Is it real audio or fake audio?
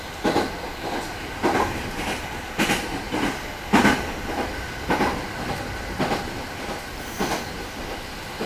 real